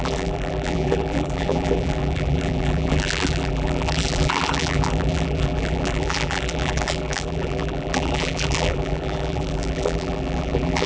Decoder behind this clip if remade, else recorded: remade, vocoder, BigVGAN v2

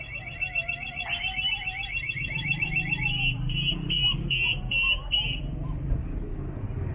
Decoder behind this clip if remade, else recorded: remade, vocoder, BigVGAN v2